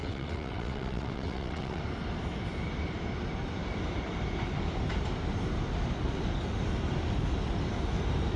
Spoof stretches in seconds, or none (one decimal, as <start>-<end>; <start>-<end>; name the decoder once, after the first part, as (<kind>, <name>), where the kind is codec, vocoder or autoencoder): 0.0-1.8 (vocoder, WaveNeXt)

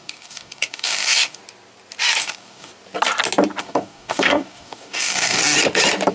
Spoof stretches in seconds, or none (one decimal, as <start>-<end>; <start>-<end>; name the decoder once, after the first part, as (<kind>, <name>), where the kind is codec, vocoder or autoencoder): 0.0-1.4 (codec, DAC); 2.2-2.7; 3.6-5.4

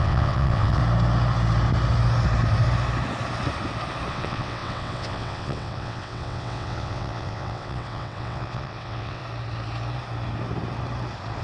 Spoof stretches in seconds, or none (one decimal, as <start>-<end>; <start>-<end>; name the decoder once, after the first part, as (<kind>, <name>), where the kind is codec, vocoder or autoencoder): 0.0-0.8 (vocoder, WaveNeXt); 4.1-9.2

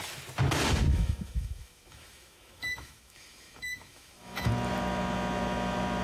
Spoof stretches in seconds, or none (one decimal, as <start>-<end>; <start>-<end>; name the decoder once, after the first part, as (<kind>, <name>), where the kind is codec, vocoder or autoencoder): 0.9-4.5 (autoencoder, DAC-VAE)

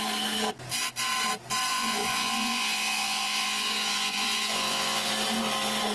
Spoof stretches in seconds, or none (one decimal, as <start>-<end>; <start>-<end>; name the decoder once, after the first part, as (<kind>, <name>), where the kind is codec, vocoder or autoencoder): 1.7-5.1 (vocoder, Vocos)

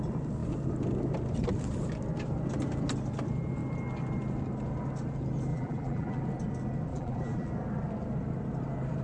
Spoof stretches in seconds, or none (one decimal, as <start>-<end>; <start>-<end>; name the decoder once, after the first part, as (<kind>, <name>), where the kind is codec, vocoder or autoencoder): 5.5-6.2 (vocoder, BigVGAN v2); 6.9-7.5